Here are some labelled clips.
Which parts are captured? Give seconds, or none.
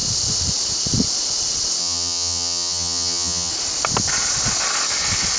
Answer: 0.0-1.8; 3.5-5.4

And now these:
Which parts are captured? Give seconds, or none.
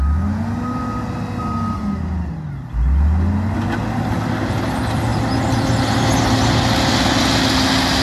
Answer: 0.0-8.0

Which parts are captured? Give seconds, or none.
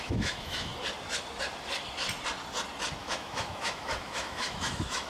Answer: 0.7-3.0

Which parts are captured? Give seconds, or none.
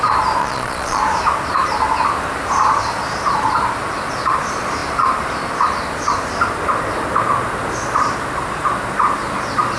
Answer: 0.0-0.4; 1.0-9.8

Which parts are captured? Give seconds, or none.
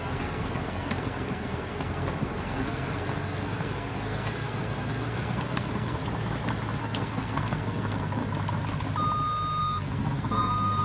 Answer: 6.0-6.8; 8.2-9.6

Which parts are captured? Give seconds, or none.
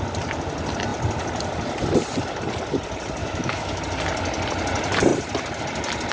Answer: 0.0-3.2; 3.8-6.1